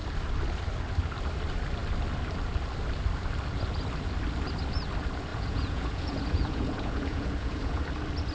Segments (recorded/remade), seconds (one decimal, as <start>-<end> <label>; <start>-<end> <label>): 0.0-5.3 recorded; 5.3-7.8 remade; 7.8-8.3 recorded